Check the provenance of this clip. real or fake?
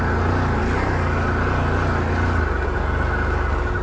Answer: real